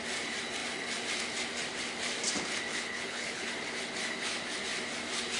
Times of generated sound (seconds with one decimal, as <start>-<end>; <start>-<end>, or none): 2.7-3.5